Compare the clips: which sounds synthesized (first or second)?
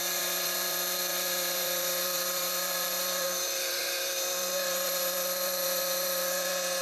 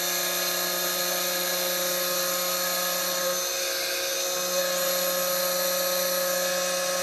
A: first